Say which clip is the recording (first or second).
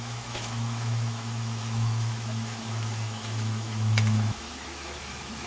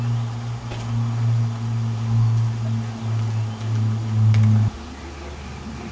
second